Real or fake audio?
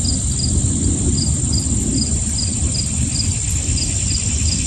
real